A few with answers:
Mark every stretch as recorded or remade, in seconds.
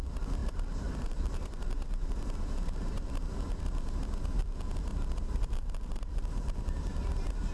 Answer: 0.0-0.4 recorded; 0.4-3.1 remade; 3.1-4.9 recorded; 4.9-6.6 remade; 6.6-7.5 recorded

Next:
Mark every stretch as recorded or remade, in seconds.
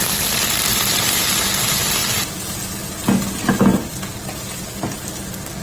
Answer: 0.0-0.7 recorded; 0.7-1.2 remade; 1.2-3.7 recorded; 3.7-5.6 remade